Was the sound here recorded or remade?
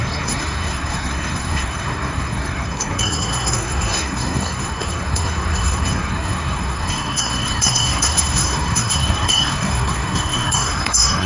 remade